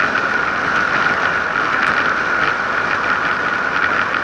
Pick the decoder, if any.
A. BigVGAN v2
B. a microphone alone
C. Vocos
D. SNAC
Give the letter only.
B